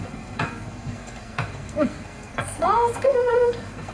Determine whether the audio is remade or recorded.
remade